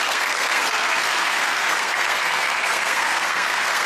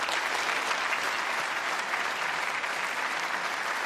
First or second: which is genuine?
second